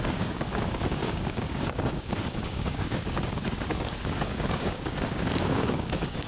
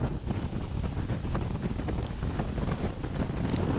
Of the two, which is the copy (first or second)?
first